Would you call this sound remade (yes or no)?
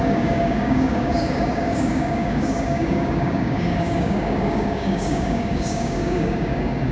yes